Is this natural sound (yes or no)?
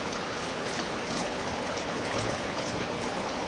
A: no